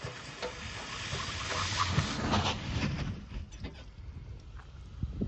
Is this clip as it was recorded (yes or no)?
yes